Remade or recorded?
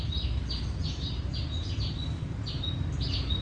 recorded